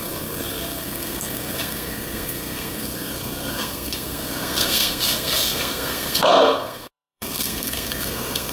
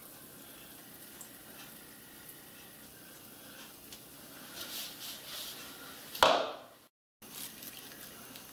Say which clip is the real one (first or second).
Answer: second